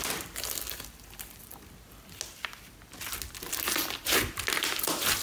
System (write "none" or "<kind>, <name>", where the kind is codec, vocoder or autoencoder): none